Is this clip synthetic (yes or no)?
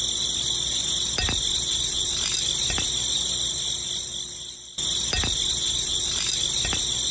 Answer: no